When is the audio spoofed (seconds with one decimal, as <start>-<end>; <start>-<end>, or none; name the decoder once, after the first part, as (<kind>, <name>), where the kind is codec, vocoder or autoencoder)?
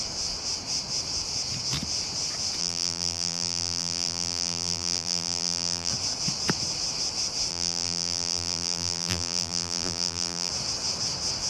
2.6-5.9 (vocoder, BigVGAN v2); 7.5-10.5